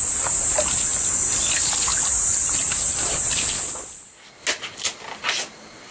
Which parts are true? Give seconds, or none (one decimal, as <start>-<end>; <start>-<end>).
0.0-5.9